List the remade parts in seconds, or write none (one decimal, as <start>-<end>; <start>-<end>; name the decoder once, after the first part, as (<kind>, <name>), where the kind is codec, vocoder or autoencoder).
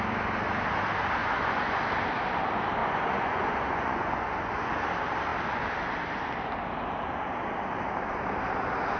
1.2-1.8 (vocoder, Vocos); 2.8-4.7